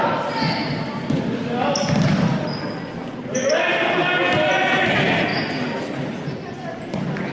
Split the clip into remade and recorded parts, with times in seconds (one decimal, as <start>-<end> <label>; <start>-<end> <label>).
0.0-7.3 recorded